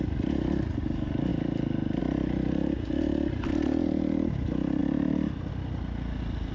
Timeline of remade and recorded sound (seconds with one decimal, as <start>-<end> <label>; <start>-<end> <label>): 0.0-1.3 recorded; 1.3-2.0 remade; 2.0-6.5 recorded